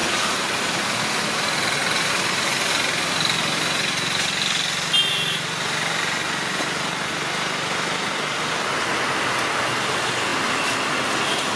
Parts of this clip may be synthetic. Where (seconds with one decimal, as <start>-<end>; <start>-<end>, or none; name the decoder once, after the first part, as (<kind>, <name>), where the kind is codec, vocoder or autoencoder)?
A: none